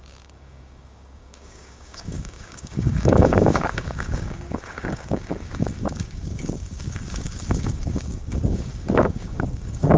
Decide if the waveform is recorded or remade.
remade